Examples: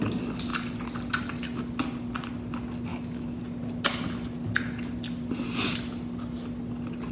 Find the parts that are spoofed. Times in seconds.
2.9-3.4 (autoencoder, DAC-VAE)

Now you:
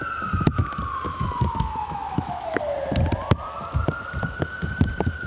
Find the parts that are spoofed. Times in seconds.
1.1-2.6 (autoencoder, DAC-VAE)

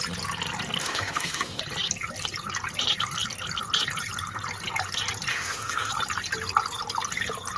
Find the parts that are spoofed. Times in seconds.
0.8-1.6 (autoencoder, DAC-VAE); 5.3-5.9

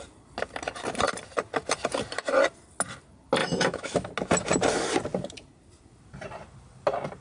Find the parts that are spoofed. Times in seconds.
3.4-4.1 (autoencoder, DAC-VAE)

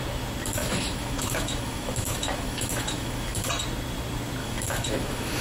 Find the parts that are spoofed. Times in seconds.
0.6-3.5 (autoencoder, DAC-VAE); 4.4-5.4